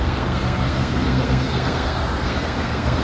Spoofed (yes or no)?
yes